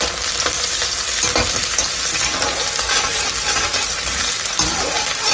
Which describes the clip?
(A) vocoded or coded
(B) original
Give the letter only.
B